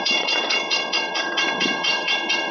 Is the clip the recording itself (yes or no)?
no